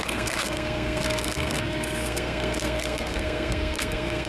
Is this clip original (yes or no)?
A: no